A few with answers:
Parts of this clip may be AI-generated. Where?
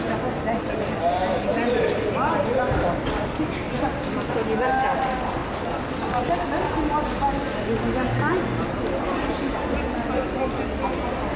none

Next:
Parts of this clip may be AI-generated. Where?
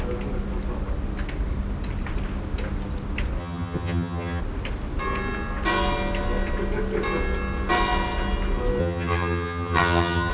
3.4-4.4 (vocoder, HiFi-GAN); 8.8-10.3